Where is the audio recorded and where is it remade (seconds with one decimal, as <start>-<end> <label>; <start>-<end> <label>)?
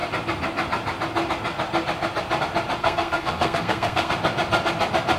0.0-2.8 recorded; 2.8-4.1 remade; 4.1-5.2 recorded